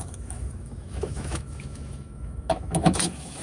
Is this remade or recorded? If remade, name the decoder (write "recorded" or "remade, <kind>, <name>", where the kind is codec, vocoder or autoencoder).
remade, autoencoder, DAC-VAE